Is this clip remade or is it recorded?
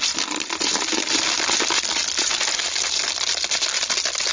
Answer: recorded